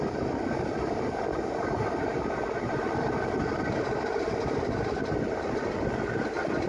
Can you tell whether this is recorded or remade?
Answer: recorded